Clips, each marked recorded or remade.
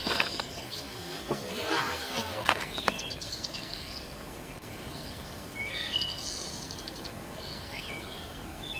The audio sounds remade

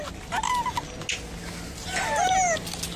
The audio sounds recorded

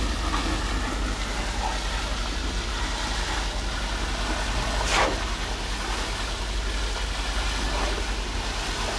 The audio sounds recorded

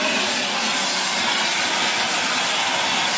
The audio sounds recorded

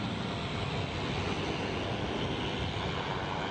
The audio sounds recorded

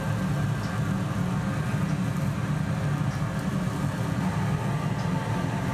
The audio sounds recorded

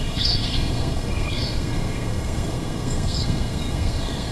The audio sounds remade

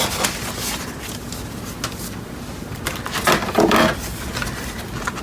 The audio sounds recorded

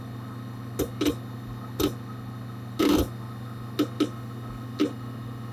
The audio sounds recorded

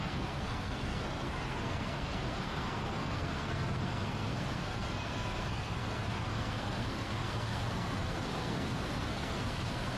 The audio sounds remade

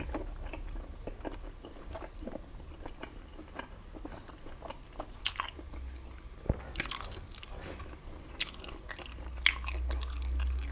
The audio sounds recorded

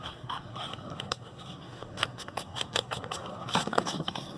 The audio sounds remade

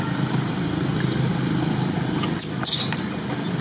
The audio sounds recorded